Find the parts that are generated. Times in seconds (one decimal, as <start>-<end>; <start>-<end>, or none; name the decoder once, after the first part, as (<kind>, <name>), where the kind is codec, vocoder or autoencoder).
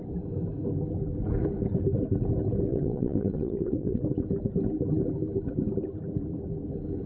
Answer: 2.7-4.0 (vocoder, WaveNeXt)